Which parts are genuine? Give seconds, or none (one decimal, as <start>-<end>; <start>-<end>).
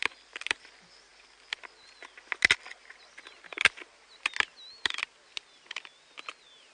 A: 0.0-6.7